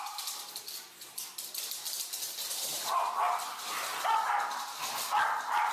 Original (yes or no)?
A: yes